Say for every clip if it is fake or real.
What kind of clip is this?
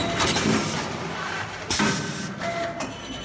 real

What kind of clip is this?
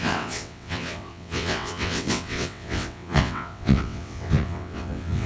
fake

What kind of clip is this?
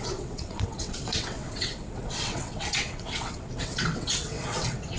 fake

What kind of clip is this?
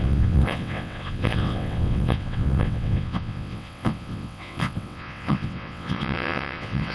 fake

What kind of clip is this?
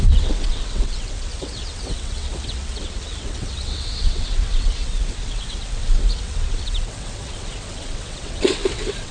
fake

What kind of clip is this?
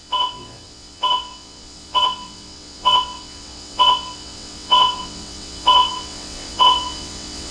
fake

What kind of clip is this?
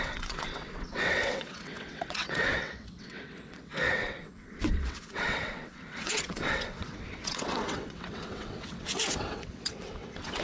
fake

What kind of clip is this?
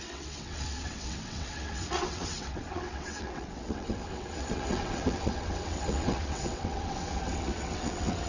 fake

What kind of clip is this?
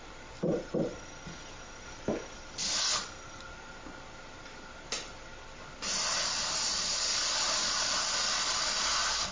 real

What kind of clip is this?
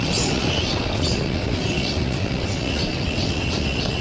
fake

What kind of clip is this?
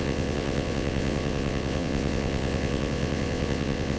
fake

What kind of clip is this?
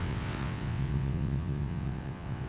fake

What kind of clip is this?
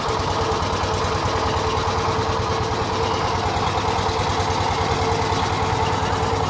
real